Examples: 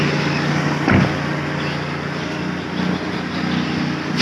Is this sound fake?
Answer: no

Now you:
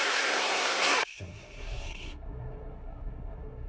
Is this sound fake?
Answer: yes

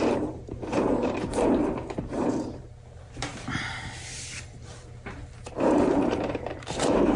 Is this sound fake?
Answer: yes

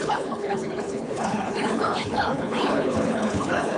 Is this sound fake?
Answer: yes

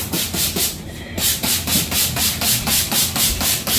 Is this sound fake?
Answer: yes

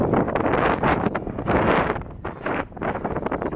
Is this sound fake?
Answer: no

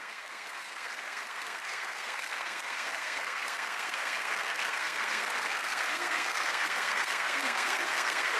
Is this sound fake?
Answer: yes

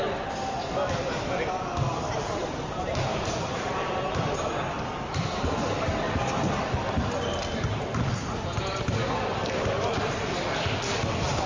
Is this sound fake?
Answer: no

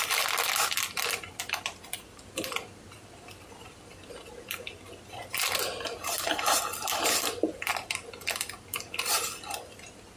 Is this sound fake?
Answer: no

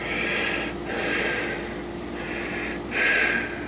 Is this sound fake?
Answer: no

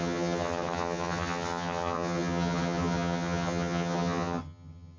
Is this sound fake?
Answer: yes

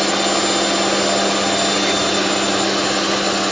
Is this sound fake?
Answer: no